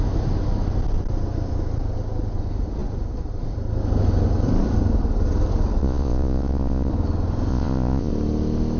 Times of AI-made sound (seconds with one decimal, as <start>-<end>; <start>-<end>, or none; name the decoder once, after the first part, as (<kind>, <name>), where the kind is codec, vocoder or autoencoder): 5.8-6.9 (vocoder, Vocos); 7.5-8.1